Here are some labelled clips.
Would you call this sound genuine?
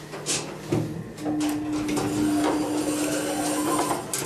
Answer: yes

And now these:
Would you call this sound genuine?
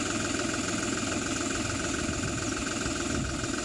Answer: yes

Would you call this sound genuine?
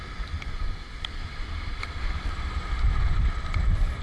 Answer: yes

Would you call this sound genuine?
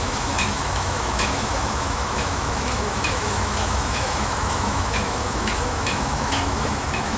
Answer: no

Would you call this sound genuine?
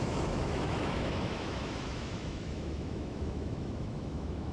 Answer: no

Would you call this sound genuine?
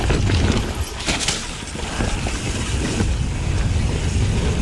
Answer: yes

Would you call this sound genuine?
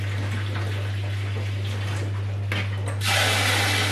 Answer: yes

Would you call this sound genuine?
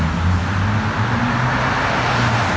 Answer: yes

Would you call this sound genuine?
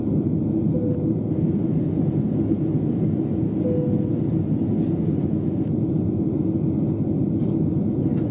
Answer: yes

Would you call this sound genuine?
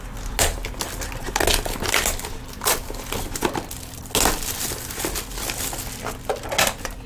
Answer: yes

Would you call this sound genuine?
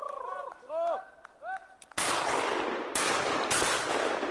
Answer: yes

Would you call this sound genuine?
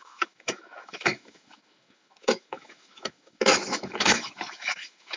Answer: no